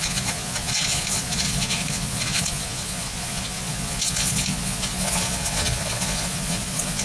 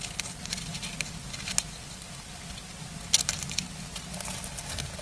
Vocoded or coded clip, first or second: first